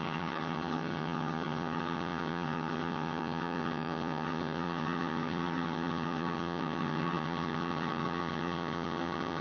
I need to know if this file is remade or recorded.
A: remade